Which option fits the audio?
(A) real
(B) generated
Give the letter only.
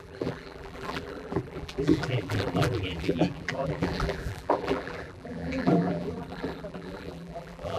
B